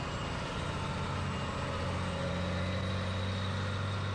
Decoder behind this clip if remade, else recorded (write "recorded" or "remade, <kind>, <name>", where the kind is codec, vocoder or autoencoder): recorded